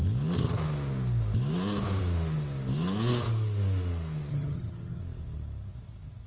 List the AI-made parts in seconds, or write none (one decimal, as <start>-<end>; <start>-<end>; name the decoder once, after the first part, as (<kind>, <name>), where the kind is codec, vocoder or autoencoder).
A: 4.3-5.0 (vocoder, HiFi-GAN)